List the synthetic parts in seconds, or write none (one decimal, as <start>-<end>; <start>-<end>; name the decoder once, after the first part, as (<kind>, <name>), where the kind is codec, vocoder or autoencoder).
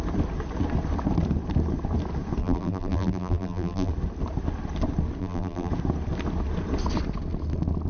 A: 2.4-3.9 (vocoder, BigVGAN v2); 5.2-5.7